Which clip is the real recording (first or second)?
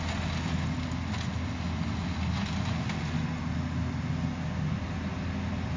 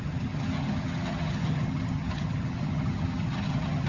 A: first